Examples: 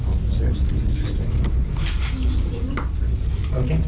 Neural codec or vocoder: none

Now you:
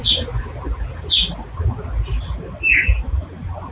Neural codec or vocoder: none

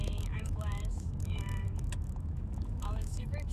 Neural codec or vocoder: autoencoder, DAC-VAE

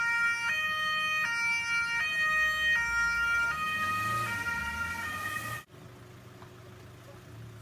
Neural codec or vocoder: none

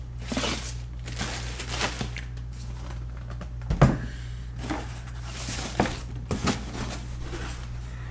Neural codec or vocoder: none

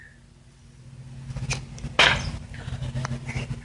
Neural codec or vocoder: none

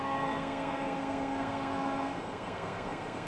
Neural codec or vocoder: codec, SNAC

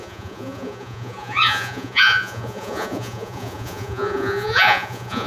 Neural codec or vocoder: vocoder, Vocos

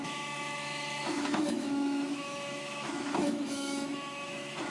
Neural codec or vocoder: autoencoder, DAC-VAE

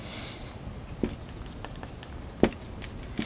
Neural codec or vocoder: none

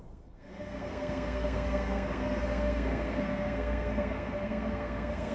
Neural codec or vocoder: codec, SNAC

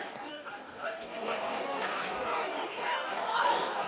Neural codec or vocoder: codec, DAC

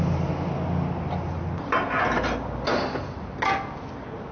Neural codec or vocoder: none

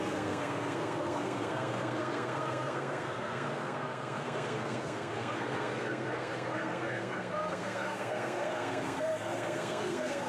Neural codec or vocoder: codec, SNAC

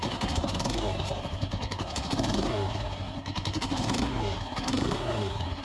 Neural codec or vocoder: codec, SNAC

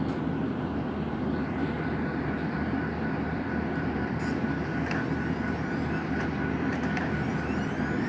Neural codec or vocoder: vocoder, BigVGAN v2